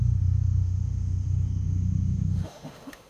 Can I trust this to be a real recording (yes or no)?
no